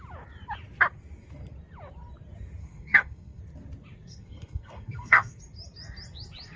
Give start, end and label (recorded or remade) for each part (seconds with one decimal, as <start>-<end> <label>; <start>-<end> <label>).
0.0-2.6 recorded; 2.6-3.4 remade; 3.4-4.1 recorded; 4.1-5.4 remade; 5.4-6.6 recorded